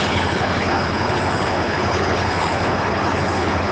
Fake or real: fake